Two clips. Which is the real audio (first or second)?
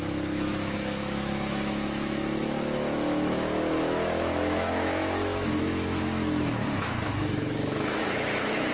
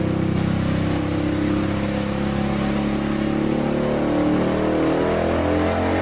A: second